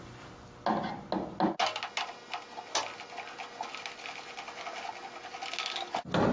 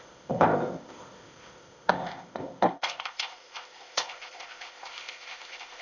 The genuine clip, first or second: first